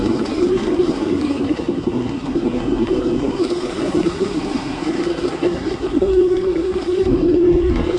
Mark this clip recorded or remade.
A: remade